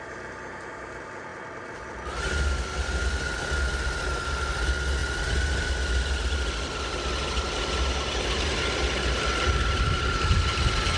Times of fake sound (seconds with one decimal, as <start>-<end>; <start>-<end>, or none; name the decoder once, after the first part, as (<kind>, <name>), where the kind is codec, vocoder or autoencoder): none